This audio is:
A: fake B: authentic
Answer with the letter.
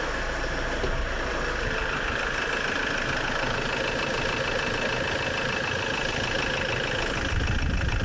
B